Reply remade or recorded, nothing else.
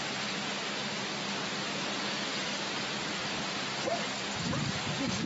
recorded